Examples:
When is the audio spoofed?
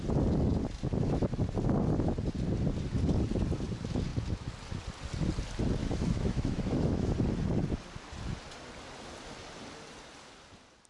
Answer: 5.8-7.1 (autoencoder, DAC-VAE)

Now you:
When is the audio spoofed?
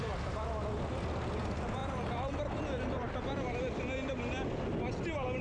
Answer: none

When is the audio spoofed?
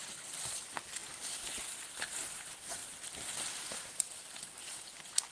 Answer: none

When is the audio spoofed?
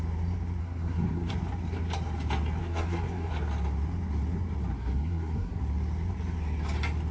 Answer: 0.6-1.3 (codec, SNAC); 2.6-3.3; 4.8-5.6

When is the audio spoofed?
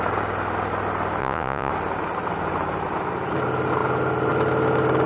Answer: 1.2-1.7 (vocoder, Vocos)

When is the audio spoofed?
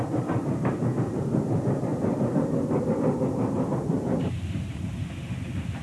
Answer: 0.0-1.9 (vocoder, BigVGAN v2); 5.3-5.8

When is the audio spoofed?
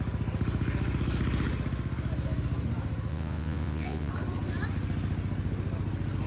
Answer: 3.1-4.1 (vocoder, Vocos)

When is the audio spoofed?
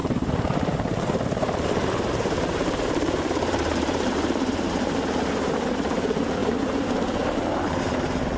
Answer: 0.0-8.4 (vocoder, BigVGAN v2)